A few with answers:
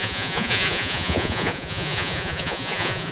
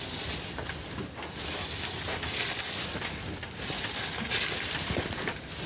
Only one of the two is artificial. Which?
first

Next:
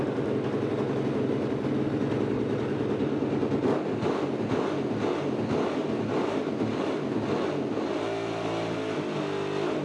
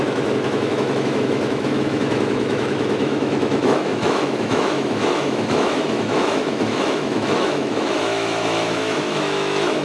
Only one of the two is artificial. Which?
second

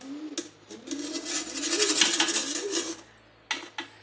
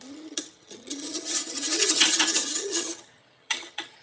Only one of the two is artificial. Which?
second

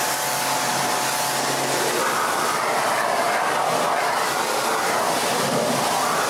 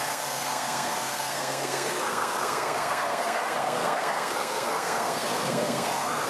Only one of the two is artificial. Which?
second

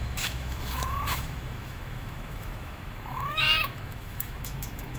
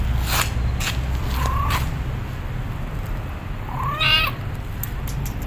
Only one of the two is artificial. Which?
first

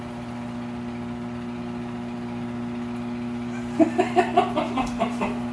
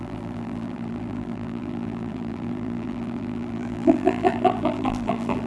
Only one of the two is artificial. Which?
second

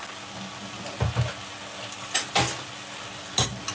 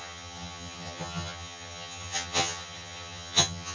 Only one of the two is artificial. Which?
second